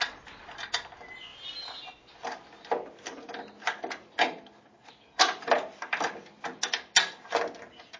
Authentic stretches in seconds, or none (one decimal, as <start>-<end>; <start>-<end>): 0.0-8.0